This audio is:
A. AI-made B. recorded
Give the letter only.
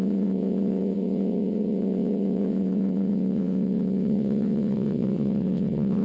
A